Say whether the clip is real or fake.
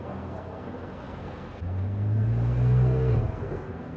fake